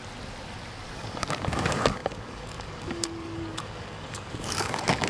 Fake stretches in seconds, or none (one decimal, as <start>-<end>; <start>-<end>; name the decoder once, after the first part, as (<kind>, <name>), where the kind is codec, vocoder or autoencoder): 0.8-5.1 (codec, DAC)

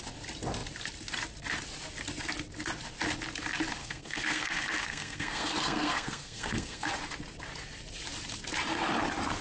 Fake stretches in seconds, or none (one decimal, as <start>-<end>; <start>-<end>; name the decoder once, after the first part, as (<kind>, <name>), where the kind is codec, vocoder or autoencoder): 3.8-6.9 (codec, SNAC)

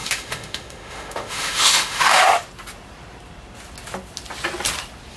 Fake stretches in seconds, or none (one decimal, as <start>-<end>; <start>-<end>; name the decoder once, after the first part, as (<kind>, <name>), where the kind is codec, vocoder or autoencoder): 0.0-2.2 (autoencoder, DAC-VAE)

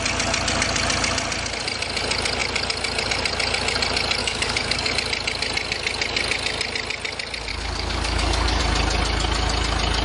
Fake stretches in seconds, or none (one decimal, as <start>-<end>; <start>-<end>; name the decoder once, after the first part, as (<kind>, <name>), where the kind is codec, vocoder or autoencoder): 4.2-4.9 (codec, DAC); 7.5-8.6